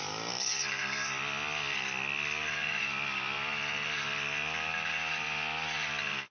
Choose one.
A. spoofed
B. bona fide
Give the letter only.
B